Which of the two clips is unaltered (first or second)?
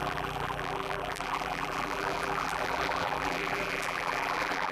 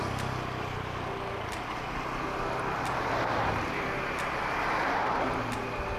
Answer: second